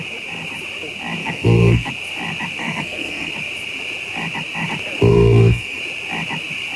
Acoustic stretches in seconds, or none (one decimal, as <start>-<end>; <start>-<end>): 0.0-1.2; 1.9-2.6; 3.3-5.1; 5.8-6.8